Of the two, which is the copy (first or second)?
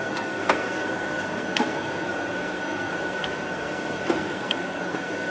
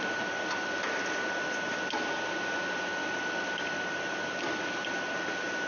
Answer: first